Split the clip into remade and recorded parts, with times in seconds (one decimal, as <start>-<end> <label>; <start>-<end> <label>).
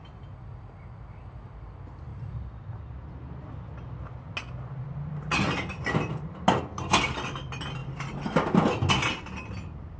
0.0-10.0 recorded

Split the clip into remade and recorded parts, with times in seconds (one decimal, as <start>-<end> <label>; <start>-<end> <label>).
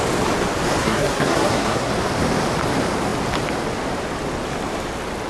0.0-0.8 recorded; 0.8-1.9 remade; 1.9-5.3 recorded